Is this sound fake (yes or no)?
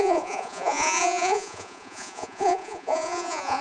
yes